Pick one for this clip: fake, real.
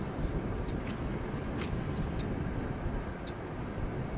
real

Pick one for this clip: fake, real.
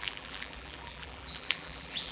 fake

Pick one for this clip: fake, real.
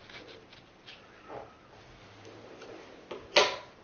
real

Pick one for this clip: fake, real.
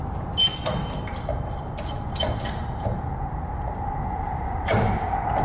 real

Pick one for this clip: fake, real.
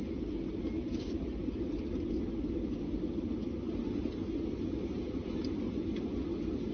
real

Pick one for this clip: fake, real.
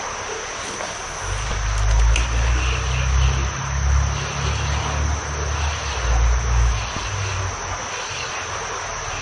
real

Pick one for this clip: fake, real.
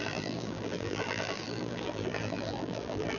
fake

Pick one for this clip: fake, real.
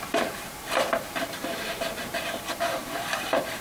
fake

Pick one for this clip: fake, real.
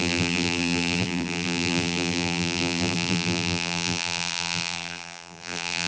fake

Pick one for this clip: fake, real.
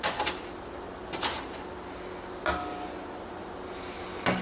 real